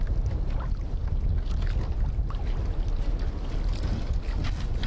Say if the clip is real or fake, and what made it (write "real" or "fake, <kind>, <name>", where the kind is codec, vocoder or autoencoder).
real